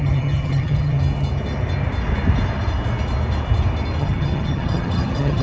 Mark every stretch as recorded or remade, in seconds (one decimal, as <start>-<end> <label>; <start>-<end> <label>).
0.0-1.0 remade; 1.0-4.0 recorded; 4.0-5.4 remade